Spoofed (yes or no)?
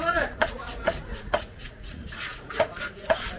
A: yes